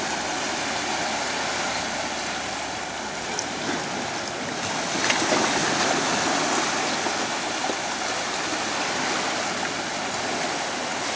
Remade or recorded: recorded